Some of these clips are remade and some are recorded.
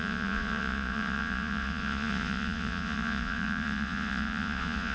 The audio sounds remade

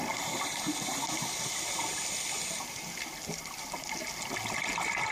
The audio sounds recorded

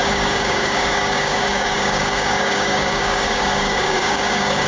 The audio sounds remade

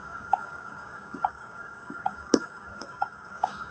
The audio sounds remade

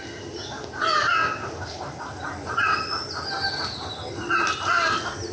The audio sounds recorded